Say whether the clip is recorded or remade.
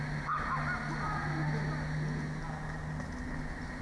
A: recorded